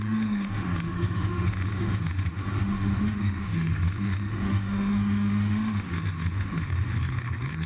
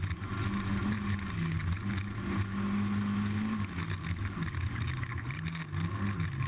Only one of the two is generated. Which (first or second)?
first